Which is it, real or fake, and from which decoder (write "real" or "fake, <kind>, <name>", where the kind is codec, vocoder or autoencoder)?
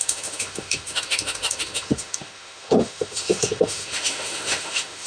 fake, autoencoder, DAC-VAE